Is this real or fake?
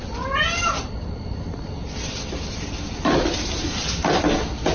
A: real